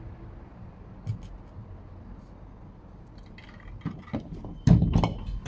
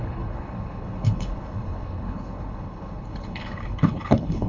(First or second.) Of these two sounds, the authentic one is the first